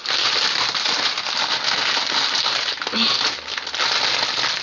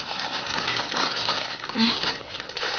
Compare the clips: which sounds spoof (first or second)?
second